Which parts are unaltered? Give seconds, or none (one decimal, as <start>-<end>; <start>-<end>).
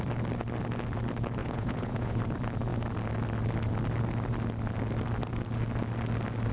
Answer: 0.0-1.4; 2.2-6.5